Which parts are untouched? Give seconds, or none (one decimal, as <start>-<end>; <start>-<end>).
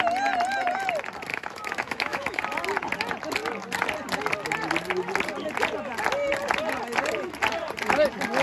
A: 0.0-1.3; 2.4-8.4